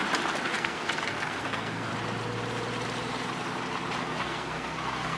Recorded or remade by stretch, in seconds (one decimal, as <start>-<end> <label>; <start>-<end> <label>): 0.0-0.5 recorded; 0.5-1.9 remade; 1.9-4.0 recorded; 4.0-5.2 remade

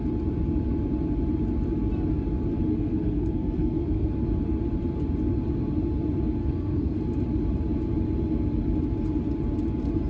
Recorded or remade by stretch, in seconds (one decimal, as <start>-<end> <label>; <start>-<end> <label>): 0.0-2.7 recorded; 2.7-4.1 remade; 4.1-6.4 recorded; 6.4-7.0 remade; 7.0-10.1 recorded

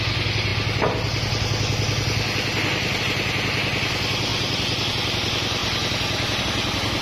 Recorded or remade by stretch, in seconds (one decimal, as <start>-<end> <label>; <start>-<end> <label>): 0.0-7.0 recorded

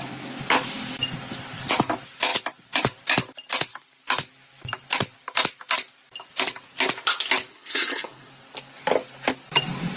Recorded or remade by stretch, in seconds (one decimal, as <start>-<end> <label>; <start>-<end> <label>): 0.0-7.5 recorded; 7.5-8.3 remade; 8.3-10.0 recorded

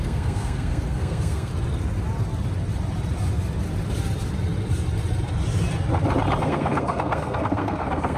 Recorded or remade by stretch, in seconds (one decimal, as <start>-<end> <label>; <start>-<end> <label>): 0.0-1.5 remade; 1.5-6.4 recorded; 6.4-8.2 remade

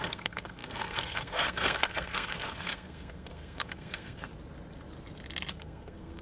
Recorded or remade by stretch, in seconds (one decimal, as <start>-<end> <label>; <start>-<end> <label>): 0.0-4.3 remade; 4.3-5.5 recorded; 5.5-6.2 remade

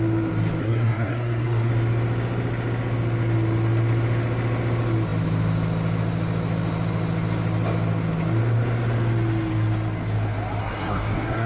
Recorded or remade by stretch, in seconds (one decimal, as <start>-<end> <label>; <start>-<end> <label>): 0.0-0.6 recorded; 0.6-1.7 remade; 1.7-10.6 recorded; 10.6-11.5 remade